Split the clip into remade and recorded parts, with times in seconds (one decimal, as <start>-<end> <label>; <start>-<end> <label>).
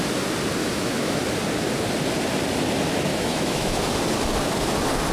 0.0-0.6 recorded; 0.6-1.2 remade; 1.2-3.1 recorded; 3.1-3.8 remade; 3.8-5.1 recorded